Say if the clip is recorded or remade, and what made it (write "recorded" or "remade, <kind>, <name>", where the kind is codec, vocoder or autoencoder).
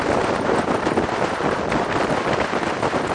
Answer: recorded